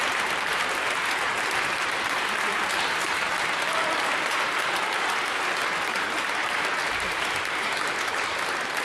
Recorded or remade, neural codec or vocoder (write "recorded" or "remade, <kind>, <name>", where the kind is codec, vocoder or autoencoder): remade, vocoder, BigVGAN v2